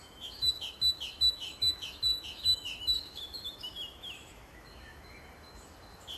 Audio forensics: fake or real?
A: fake